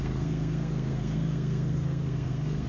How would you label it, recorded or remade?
remade